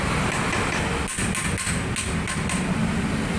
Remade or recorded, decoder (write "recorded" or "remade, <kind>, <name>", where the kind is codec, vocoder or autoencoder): recorded